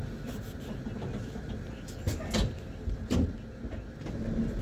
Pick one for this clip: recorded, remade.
recorded